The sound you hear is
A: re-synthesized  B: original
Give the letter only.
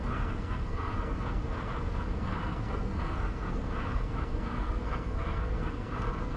A